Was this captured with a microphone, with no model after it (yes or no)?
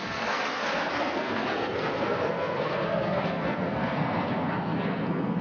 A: no